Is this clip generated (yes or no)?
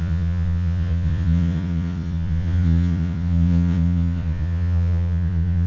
yes